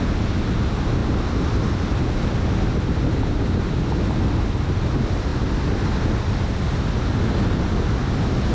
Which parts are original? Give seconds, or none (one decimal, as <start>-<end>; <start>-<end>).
0.0-8.5